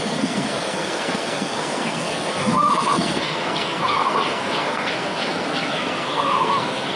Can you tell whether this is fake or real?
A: fake